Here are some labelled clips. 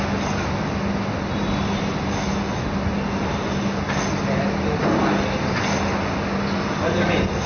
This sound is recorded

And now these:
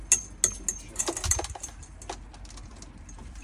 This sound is recorded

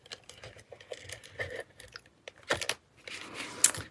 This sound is recorded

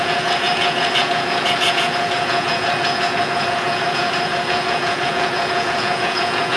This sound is remade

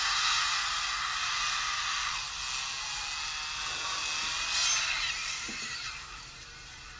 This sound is recorded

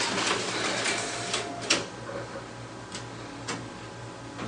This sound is recorded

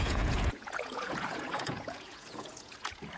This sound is remade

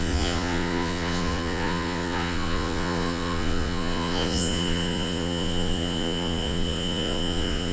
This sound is remade